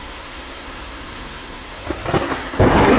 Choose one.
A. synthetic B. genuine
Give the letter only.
A